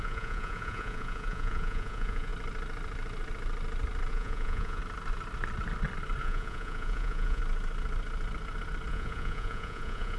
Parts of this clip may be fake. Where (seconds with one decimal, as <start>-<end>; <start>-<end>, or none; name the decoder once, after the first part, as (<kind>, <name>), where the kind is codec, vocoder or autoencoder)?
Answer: 0.0-2.3 (vocoder, Vocos); 4.1-4.8; 6.2-7.4; 8.9-10.2